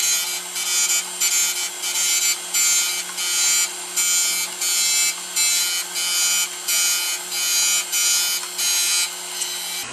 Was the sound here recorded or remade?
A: recorded